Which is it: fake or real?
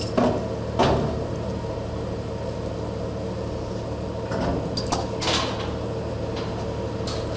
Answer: real